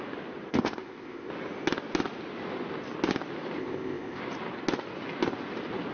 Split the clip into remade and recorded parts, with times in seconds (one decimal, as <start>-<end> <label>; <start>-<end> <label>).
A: 0.0-0.5 recorded; 0.5-1.3 remade; 1.3-3.6 recorded; 3.6-4.2 remade; 4.2-5.9 recorded